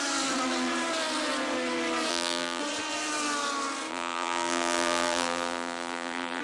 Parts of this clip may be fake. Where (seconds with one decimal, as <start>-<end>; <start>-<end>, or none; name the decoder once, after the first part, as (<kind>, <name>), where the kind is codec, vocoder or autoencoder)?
2.1-2.6 (vocoder, BigVGAN v2); 3.9-6.4

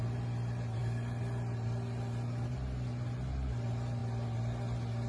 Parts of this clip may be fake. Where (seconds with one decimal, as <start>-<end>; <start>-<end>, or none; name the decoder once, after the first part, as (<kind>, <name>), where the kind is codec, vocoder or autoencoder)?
none

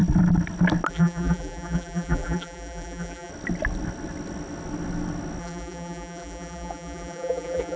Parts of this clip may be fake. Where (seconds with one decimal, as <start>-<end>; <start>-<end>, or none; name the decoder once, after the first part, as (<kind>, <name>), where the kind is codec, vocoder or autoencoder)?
0.9-3.3 (vocoder, BigVGAN v2); 5.4-7.8